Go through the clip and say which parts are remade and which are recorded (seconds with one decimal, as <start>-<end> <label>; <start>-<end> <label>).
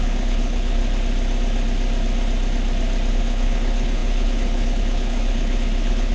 0.0-0.8 remade; 0.8-3.1 recorded; 3.1-6.1 remade